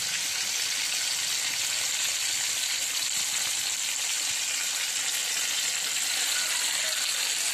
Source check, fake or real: real